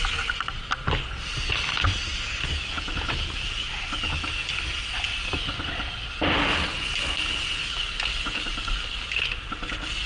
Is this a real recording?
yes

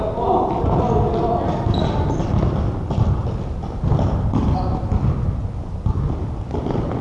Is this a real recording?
yes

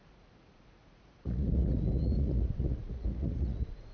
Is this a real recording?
no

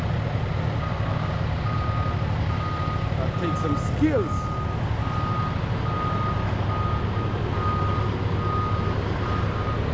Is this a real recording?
yes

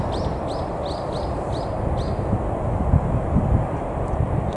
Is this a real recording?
yes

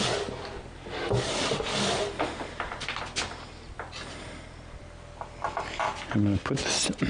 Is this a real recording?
yes